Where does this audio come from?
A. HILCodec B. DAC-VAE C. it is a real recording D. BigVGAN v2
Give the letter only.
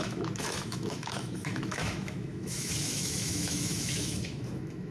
B